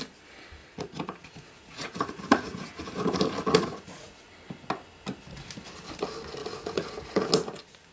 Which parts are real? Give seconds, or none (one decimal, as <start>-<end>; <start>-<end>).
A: 0.0-0.6; 2.8-3.5; 4.3-6.4; 7.3-7.9